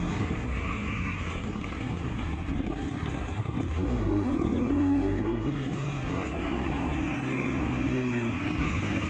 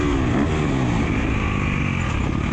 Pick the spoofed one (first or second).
first